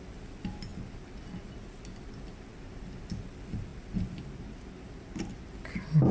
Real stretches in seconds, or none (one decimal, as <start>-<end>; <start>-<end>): 0.0-6.1